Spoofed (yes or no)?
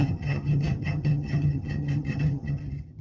yes